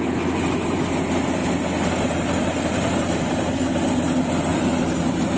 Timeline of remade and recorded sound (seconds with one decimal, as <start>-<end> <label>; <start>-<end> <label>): 0.0-5.4 recorded